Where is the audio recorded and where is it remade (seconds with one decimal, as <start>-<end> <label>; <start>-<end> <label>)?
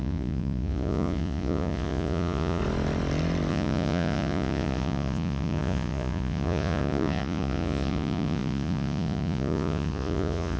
0.0-2.6 remade; 2.6-3.5 recorded; 3.5-10.6 remade